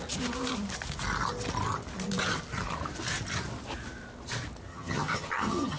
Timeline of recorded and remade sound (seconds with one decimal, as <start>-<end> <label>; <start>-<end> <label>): 0.0-4.7 recorded; 4.7-5.8 remade

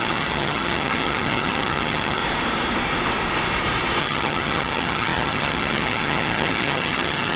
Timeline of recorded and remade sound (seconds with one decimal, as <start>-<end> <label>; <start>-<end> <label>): 0.0-2.2 remade; 2.2-4.0 recorded; 4.0-7.4 remade

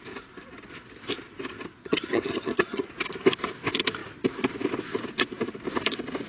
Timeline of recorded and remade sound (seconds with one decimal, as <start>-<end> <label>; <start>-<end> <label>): 0.0-1.8 recorded; 1.8-2.9 remade; 2.9-6.3 recorded

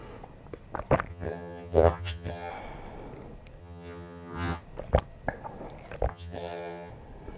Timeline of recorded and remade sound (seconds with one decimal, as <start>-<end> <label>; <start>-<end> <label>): 0.0-1.1 recorded; 1.1-2.5 remade; 2.5-3.6 recorded; 3.6-4.6 remade; 4.6-6.1 recorded; 6.1-6.9 remade; 6.9-7.4 recorded